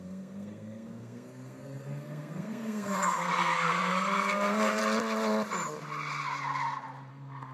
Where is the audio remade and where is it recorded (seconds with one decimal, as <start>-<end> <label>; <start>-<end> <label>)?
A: 0.0-4.8 remade; 4.8-7.1 recorded; 7.1-7.5 remade